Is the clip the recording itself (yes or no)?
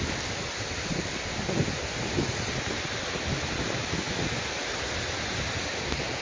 yes